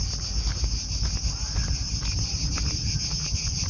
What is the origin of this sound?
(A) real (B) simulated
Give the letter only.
A